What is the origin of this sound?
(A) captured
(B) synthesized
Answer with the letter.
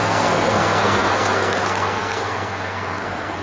B